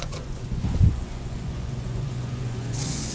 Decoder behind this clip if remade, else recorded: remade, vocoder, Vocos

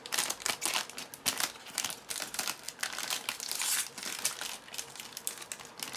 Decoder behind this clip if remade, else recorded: recorded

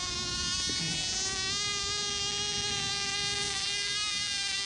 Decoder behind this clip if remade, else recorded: recorded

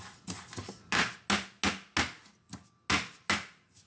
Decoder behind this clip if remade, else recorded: recorded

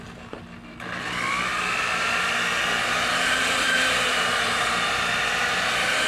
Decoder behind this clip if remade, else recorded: recorded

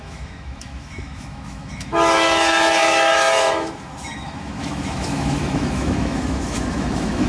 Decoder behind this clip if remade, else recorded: remade, autoencoder, DAC-VAE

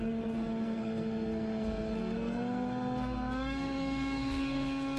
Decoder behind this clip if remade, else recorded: remade, codec, SNAC